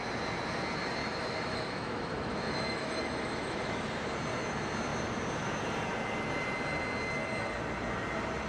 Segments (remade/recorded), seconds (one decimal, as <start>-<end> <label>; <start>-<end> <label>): 0.0-1.0 recorded; 1.0-3.9 remade; 3.9-8.5 recorded